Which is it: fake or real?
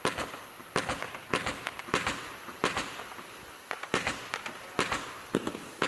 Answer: real